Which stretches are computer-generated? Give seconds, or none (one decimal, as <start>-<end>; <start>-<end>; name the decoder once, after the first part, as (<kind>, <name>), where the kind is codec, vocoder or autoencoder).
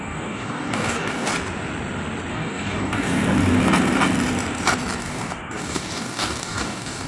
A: 0.0-1.3 (codec, DAC); 2.3-3.2; 5.0-7.1